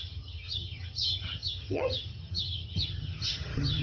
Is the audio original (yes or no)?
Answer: no